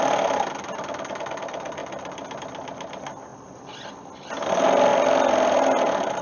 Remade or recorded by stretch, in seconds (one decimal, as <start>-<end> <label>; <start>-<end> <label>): 0.0-6.2 recorded